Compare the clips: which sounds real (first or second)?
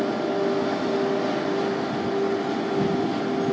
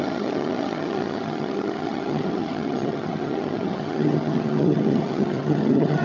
first